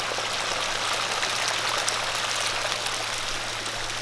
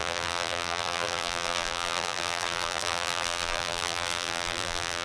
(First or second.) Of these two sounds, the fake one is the second